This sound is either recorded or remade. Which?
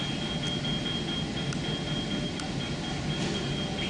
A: recorded